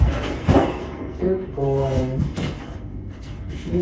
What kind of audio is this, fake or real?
fake